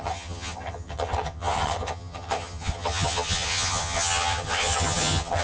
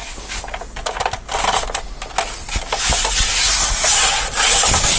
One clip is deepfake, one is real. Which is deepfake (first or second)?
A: first